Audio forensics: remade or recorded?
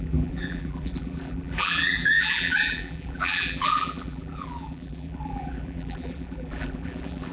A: remade